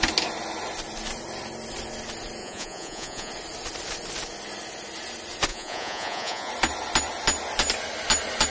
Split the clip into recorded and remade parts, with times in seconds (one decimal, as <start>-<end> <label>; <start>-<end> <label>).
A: 0.0-2.4 recorded; 2.4-3.3 remade; 3.3-5.5 recorded; 5.5-6.5 remade; 6.5-8.5 recorded